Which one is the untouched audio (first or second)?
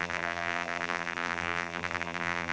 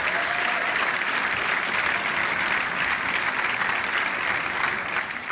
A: second